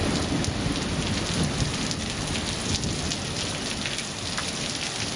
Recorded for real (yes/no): yes